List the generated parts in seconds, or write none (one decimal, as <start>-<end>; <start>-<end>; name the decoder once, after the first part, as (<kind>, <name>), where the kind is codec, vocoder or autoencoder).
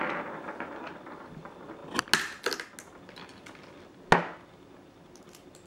none